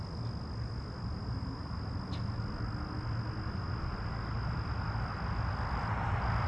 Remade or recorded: recorded